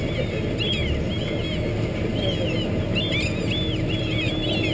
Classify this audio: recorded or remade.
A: recorded